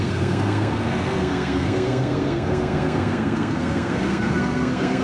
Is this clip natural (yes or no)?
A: no